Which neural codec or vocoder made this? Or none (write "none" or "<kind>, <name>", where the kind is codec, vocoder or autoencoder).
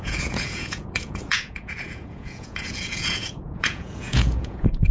vocoder, Vocos